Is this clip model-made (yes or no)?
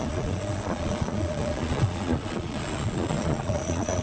yes